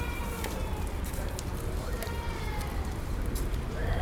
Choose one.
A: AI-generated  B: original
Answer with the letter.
A